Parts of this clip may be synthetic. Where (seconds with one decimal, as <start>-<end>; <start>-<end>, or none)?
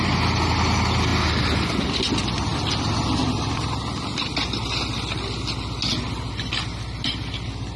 none